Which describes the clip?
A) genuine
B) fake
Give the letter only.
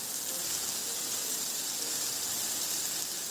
A